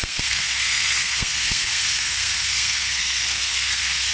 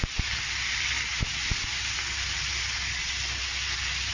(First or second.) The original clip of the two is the second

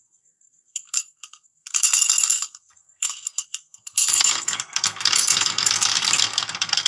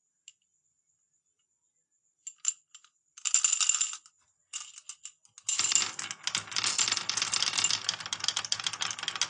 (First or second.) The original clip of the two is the second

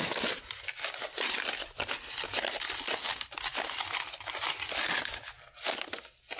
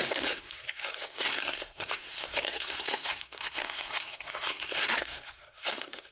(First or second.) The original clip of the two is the first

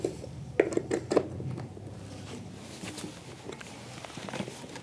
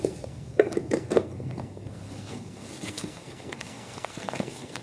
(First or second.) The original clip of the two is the first